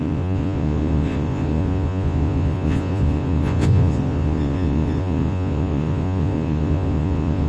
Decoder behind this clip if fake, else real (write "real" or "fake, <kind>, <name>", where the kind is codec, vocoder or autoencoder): fake, vocoder, Vocos